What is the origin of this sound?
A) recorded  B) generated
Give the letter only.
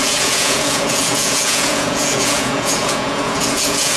B